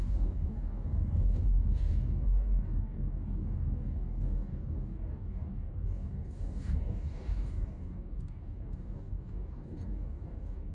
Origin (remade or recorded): remade